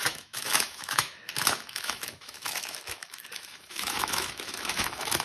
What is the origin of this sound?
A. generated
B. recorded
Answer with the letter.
A